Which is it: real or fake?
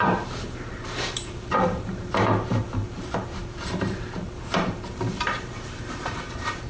fake